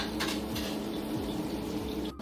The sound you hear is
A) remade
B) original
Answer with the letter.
A